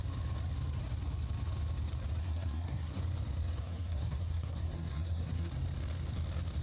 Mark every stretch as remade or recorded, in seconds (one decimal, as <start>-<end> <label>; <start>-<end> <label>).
0.0-2.2 recorded; 2.2-3.0 remade; 3.0-3.6 recorded; 3.6-5.5 remade; 5.5-6.6 recorded